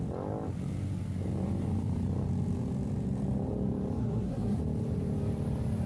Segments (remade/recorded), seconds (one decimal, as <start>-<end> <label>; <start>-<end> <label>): 0.0-4.0 recorded; 4.0-4.6 remade; 4.6-5.9 recorded